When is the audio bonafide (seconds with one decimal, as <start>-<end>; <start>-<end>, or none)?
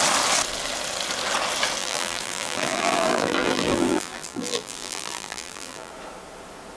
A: 0.0-1.8; 5.9-6.8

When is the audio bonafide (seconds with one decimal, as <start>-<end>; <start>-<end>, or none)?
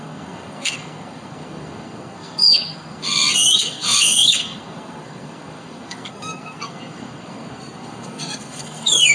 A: none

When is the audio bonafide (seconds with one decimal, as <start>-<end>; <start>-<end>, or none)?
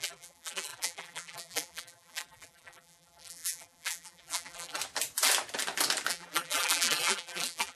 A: 4.8-6.1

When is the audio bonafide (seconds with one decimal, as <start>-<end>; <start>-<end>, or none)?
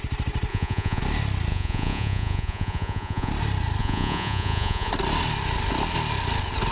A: 0.0-0.5; 1.0-1.5; 3.3-3.8; 4.9-6.7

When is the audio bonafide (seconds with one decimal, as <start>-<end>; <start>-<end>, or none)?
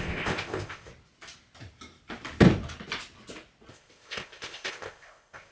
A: 0.9-3.7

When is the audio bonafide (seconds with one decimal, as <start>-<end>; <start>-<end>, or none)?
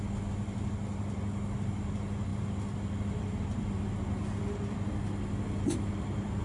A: 0.0-6.4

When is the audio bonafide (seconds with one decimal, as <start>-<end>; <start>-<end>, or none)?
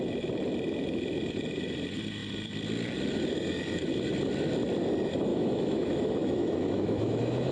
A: 0.0-5.3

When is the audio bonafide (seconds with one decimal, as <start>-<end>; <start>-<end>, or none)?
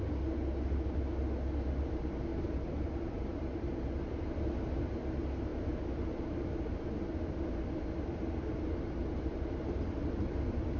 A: 0.0-2.3; 4.4-10.8